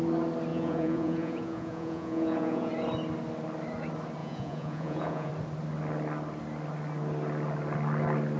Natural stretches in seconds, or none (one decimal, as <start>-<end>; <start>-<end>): 0.0-0.5; 2.7-4.2; 5.3-8.4